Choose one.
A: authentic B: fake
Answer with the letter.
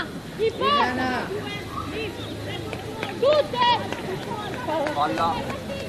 B